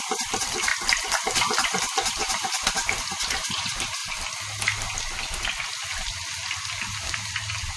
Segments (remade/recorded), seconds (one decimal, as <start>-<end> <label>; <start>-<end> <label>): 0.0-0.7 remade; 0.7-3.0 recorded; 3.0-4.0 remade; 4.0-7.8 recorded